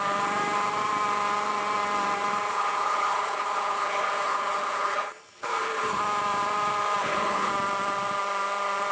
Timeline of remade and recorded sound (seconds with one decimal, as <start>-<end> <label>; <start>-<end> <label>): 0.0-2.5 recorded; 2.5-6.0 remade; 6.0-7.0 recorded; 7.0-7.5 remade; 7.5-8.9 recorded